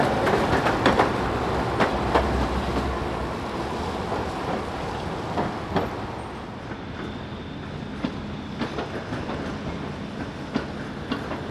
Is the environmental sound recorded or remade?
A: recorded